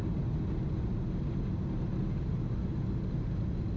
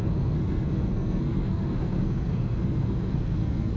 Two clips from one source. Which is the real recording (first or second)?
first